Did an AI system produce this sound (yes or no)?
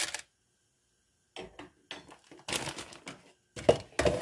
no